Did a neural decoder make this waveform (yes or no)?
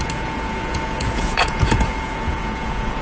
yes